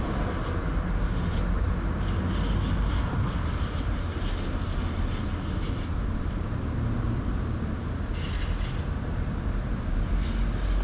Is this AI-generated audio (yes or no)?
no